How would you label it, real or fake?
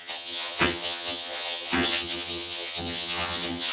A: fake